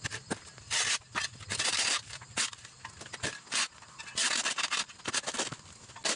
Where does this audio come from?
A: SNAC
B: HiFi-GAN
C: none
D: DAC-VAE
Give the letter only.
C